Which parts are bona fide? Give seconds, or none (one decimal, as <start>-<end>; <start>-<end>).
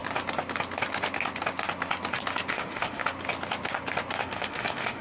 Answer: 0.0-2.5; 3.0-4.2